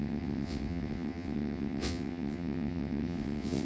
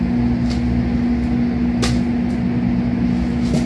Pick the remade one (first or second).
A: first